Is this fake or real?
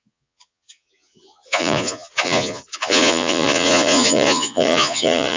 fake